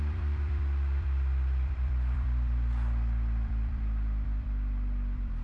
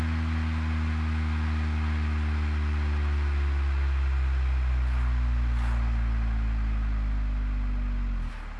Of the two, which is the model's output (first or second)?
first